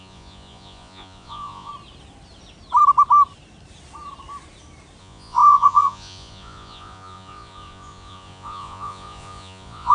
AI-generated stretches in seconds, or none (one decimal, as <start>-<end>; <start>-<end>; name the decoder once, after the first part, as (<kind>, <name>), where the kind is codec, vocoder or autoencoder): 0.0-1.7 (vocoder, Vocos); 5.0-9.9